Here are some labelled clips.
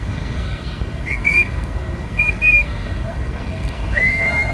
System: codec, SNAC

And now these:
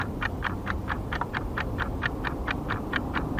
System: vocoder, BigVGAN v2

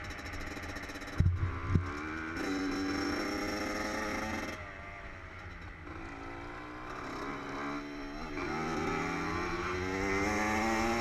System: none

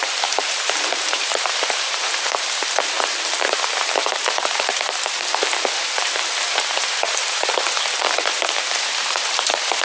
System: vocoder, BigVGAN v2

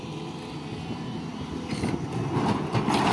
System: none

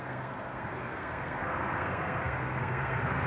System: codec, SNAC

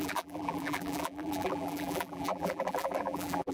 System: vocoder, BigVGAN v2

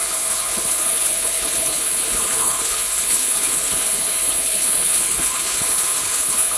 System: codec, HILCodec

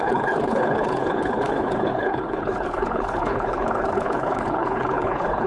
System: codec, HILCodec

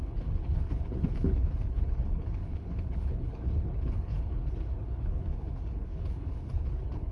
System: codec, HILCodec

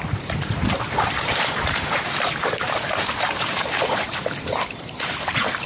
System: vocoder, BigVGAN v2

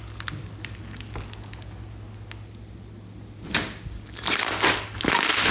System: none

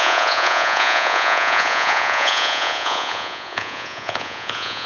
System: vocoder, Vocos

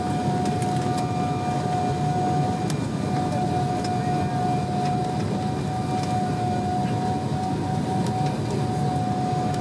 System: none